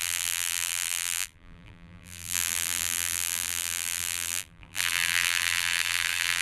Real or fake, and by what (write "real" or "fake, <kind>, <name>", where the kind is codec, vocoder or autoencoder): fake, vocoder, BigVGAN v2